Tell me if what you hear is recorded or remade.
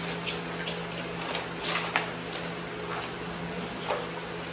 recorded